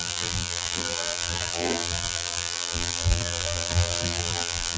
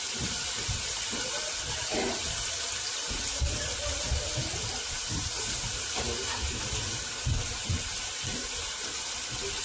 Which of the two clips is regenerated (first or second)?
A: first